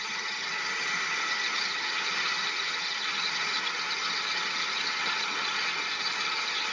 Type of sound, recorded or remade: remade